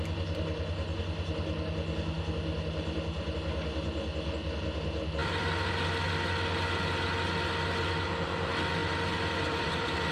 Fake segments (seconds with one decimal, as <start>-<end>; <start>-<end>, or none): 5.2-5.7; 8.8-10.1